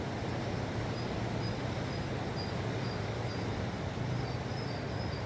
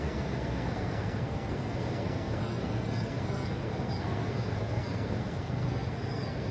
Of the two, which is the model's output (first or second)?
second